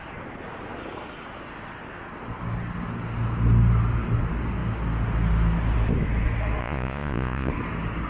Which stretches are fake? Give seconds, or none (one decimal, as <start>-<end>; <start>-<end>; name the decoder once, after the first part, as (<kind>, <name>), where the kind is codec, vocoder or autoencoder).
6.6-7.5 (vocoder, Vocos)